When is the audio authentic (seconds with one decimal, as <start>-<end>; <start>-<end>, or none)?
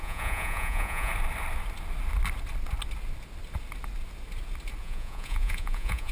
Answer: 1.1-4.8